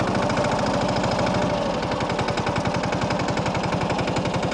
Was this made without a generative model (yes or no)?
yes